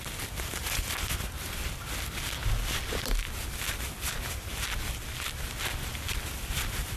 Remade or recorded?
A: recorded